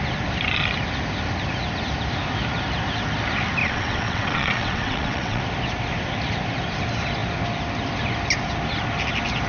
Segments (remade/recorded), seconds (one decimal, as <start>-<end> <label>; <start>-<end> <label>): 0.0-3.6 recorded; 3.6-5.4 remade; 5.4-9.5 recorded